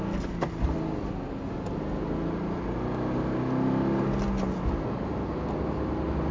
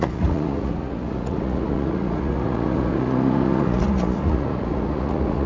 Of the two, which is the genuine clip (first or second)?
first